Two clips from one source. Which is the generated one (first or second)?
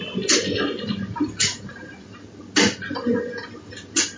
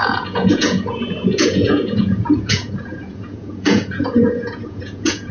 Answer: second